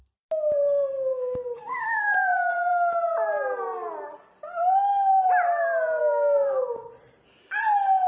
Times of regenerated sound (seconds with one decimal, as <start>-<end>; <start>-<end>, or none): 1.1-2.5; 6.0-6.9